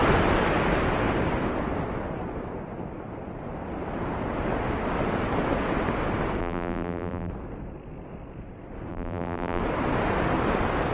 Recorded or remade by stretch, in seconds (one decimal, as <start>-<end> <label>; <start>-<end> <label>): 0.0-6.4 recorded; 6.4-7.3 remade; 7.3-8.9 recorded; 8.9-9.6 remade; 9.6-10.9 recorded